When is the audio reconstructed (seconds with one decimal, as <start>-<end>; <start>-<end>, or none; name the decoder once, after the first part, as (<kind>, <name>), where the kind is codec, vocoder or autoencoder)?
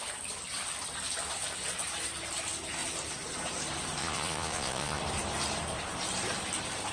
4.0-5.0 (vocoder, Vocos)